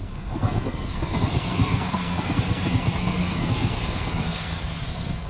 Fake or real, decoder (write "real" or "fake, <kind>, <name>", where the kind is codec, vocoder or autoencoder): fake, codec, SNAC